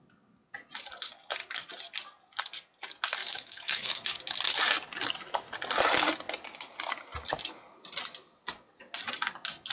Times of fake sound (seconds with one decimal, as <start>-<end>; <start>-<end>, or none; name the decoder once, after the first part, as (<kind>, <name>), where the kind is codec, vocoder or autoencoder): 3.2-4.2 (autoencoder, DAC-VAE)